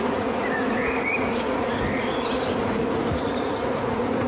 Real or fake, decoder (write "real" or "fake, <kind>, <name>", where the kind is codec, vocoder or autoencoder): fake, vocoder, Vocos